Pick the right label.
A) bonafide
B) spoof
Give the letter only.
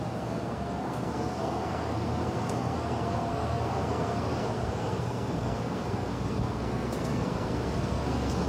B